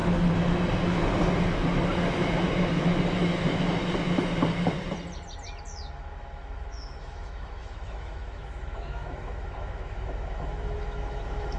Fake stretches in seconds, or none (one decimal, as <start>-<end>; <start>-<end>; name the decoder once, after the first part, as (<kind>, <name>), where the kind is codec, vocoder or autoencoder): 2.1-3.3 (autoencoder, DAC-VAE); 5.9-11.6